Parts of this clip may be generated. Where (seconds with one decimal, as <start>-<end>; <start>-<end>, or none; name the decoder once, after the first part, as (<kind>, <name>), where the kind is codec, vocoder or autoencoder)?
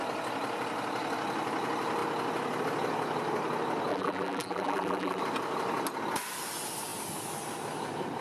3.9-5.2 (vocoder, BigVGAN v2)